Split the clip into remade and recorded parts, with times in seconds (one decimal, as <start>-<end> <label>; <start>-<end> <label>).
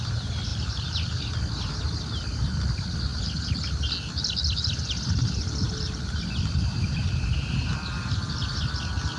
0.0-0.5 recorded; 0.5-1.2 remade; 1.2-9.2 recorded